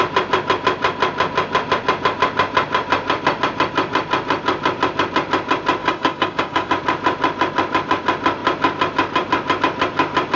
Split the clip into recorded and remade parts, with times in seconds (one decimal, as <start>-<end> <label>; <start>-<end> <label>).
0.0-5.8 recorded; 5.8-6.7 remade; 6.7-10.4 recorded